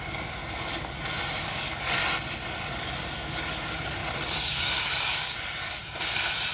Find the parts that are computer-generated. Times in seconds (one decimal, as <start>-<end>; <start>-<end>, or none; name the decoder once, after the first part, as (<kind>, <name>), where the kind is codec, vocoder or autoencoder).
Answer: 0.0-0.4 (codec, DAC); 1.4-2.0; 2.8-4.0; 4.5-5.8